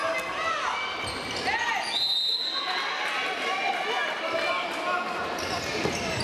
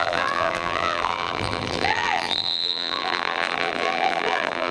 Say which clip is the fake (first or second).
second